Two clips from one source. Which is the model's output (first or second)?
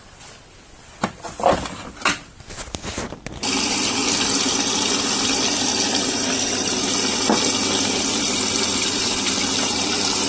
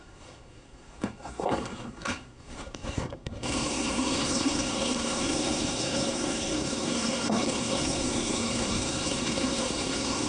second